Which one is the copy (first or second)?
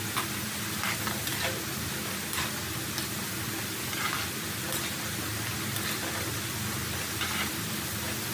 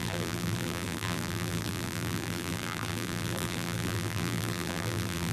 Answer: second